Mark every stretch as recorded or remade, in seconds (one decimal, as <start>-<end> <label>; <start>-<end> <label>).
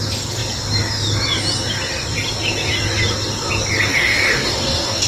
0.0-3.9 recorded; 3.9-5.1 remade